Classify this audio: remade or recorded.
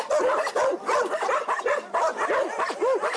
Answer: recorded